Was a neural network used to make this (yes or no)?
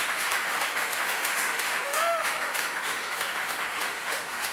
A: yes